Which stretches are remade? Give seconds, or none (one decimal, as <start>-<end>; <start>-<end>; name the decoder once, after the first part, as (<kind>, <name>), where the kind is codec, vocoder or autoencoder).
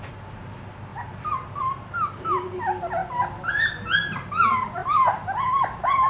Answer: none